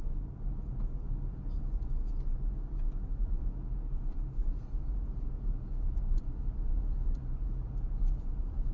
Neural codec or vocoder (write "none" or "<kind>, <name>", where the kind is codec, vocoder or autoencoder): vocoder, Vocos